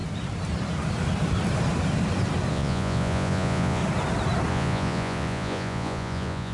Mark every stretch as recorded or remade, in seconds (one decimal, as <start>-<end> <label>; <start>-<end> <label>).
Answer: 0.0-2.5 recorded; 2.5-3.8 remade; 3.8-4.5 recorded; 4.5-6.5 remade